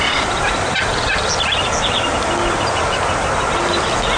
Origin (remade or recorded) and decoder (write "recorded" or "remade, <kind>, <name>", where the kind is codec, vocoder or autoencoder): recorded